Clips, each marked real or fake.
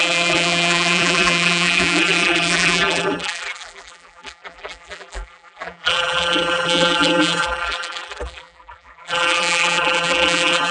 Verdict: fake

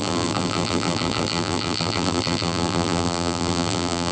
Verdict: fake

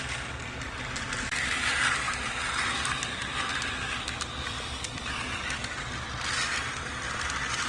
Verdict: fake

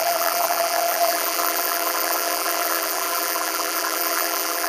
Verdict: fake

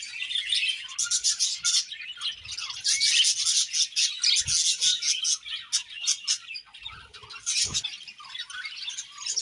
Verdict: real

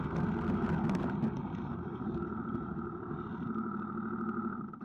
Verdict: real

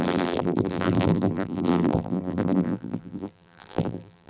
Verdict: fake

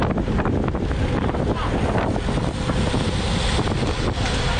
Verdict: real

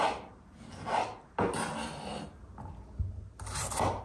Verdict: real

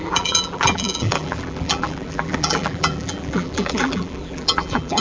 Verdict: fake